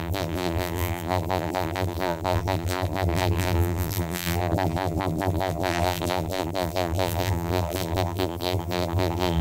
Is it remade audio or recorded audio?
remade